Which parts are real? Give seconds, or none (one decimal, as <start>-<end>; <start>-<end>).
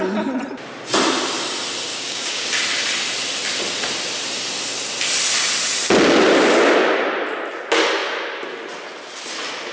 0.0-1.9; 2.5-9.7